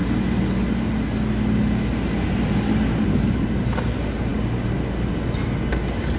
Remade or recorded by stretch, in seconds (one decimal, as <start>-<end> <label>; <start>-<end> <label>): 0.0-6.2 recorded